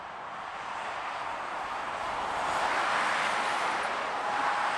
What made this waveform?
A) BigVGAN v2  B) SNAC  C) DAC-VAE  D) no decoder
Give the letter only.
D